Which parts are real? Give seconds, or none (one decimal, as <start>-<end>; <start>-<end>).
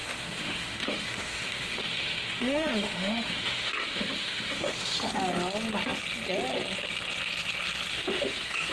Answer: 5.1-7.9